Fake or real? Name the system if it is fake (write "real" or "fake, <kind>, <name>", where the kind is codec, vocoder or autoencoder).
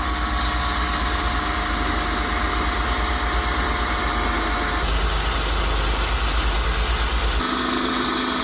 real